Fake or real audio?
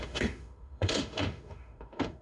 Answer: fake